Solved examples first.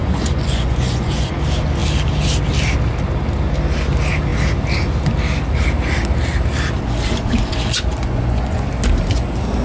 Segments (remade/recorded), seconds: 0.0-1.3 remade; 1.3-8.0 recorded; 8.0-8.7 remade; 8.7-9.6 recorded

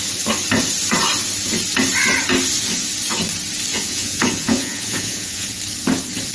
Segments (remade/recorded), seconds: 0.0-3.7 recorded; 3.7-5.6 remade; 5.6-6.3 recorded